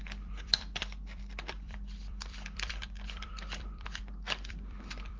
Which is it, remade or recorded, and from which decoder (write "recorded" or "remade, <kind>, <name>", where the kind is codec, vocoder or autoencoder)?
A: remade, vocoder, BigVGAN v2